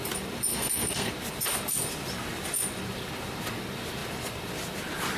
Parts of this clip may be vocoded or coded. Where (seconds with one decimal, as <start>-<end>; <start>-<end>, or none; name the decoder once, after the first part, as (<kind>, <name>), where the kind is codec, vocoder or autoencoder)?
0.5-1.1 (codec, SNAC)